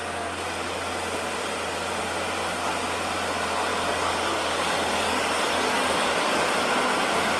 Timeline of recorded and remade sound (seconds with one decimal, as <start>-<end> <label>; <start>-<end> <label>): 0.0-3.7 recorded; 3.7-6.4 remade; 6.4-7.4 recorded